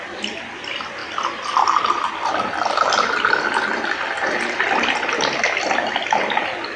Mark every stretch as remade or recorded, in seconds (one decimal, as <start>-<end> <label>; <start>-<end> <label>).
0.0-1.0 recorded; 1.0-5.1 remade; 5.1-6.8 recorded